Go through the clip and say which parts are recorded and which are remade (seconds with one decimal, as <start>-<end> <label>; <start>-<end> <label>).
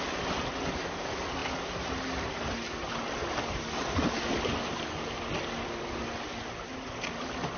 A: 0.0-7.6 recorded